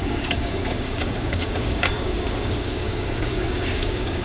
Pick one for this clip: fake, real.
fake